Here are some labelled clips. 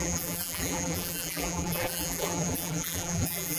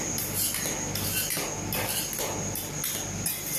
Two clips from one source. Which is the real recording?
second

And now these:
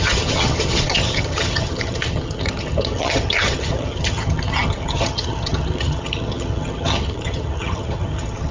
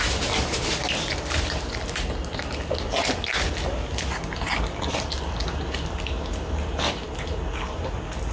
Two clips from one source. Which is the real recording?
second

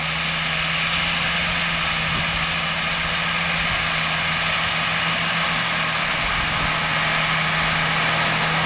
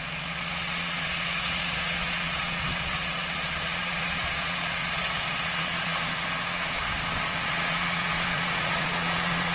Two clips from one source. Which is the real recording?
first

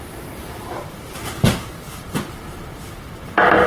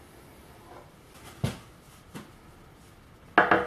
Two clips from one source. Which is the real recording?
second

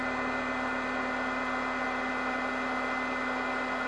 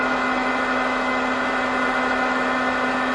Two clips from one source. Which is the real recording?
first